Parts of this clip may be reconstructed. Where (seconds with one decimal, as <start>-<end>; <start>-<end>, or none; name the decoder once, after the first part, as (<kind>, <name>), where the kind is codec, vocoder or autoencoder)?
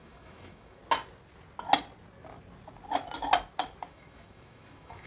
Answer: 0.0-0.8 (autoencoder, DAC-VAE); 3.9-5.1